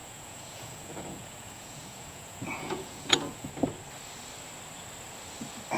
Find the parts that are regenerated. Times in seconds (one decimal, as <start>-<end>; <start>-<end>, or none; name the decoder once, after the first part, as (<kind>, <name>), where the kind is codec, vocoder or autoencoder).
0.0-3.5 (vocoder, Vocos)